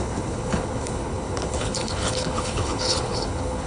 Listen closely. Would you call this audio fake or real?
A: fake